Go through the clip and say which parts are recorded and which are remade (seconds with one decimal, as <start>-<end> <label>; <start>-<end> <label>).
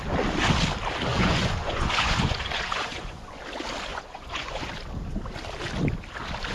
0.0-1.1 recorded; 1.1-3.4 remade; 3.4-3.9 recorded; 3.9-4.7 remade; 4.7-6.5 recorded